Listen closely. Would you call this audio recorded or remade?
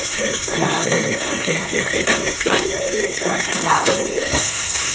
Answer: remade